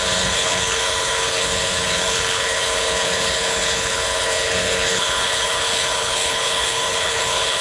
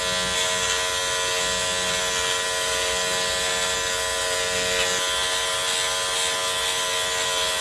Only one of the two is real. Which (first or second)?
second